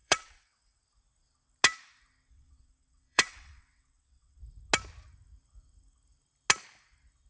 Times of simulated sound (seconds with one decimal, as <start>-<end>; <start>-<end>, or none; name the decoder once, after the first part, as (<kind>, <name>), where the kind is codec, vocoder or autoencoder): 0.0-0.8 (vocoder, WaveNeXt); 2.3-4.4